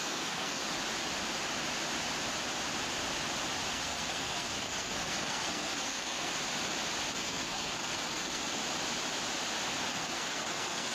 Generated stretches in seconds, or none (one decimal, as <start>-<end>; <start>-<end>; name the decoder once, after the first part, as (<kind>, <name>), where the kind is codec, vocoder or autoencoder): 0.0-0.6 (codec, SNAC); 3.7-6.3; 7.1-8.6; 9.9-10.9